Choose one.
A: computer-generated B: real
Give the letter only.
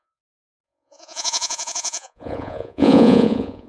A